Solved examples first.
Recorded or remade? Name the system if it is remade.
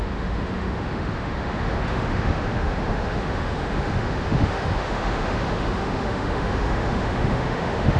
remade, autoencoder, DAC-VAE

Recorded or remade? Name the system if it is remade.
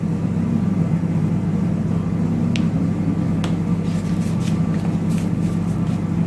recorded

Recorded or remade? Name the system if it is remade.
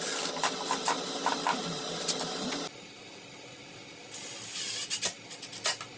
recorded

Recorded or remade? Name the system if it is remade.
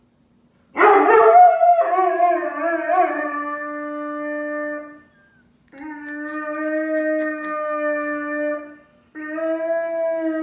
recorded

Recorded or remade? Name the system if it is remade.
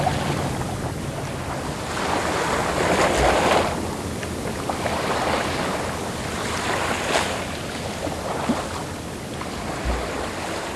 recorded